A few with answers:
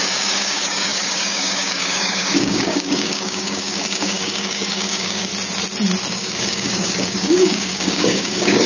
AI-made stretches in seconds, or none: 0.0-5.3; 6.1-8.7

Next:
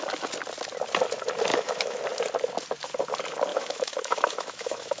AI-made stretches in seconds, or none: 1.5-2.0; 3.5-5.0

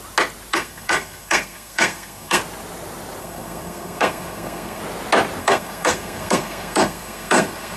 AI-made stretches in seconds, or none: 0.5-2.4; 3.2-4.8; 5.4-7.8